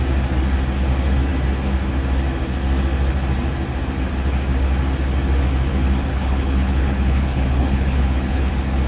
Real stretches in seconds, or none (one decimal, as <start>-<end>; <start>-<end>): 0.0-6.1; 8.5-8.9